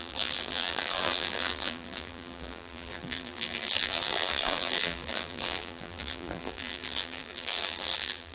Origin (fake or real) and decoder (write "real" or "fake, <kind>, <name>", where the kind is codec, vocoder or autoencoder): fake, vocoder, BigVGAN v2